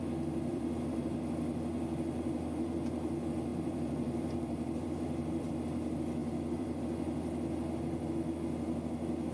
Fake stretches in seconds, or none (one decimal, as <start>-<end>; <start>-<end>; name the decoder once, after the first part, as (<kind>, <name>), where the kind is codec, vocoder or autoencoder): 0.5-1.3 (vocoder, BigVGAN v2); 3.5-5.5; 6.2-6.8